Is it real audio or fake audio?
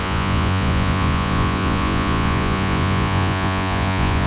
fake